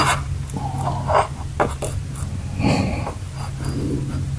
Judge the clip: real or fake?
real